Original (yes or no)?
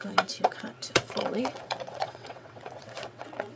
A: no